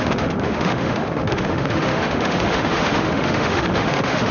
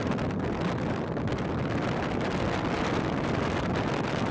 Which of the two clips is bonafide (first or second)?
second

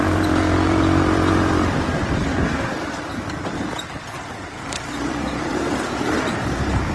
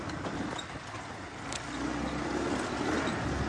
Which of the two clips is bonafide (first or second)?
second